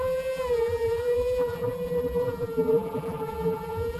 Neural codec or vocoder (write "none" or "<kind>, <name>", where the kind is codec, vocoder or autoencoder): vocoder, BigVGAN v2